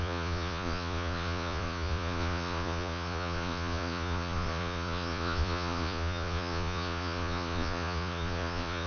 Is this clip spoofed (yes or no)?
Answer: yes